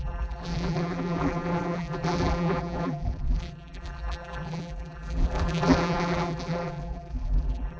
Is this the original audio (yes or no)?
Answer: no